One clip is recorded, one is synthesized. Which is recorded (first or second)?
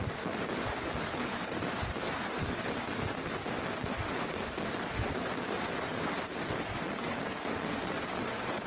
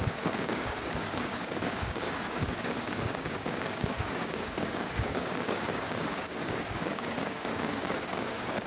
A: first